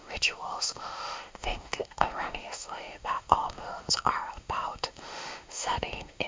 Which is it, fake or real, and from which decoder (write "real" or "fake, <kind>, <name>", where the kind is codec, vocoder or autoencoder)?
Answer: fake, autoencoder, DAC-VAE